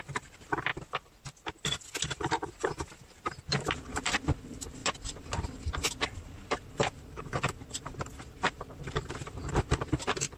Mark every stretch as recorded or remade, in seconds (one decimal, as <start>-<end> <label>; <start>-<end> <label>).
0.0-0.7 remade; 0.7-2.3 recorded; 2.3-10.4 remade